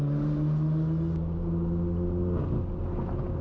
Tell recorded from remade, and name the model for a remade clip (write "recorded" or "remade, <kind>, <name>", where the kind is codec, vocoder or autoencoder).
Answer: recorded